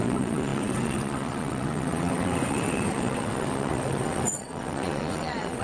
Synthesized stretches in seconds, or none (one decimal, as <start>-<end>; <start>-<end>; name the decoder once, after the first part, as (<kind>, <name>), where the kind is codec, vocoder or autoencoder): 0.0-5.6 (vocoder, WaveNeXt)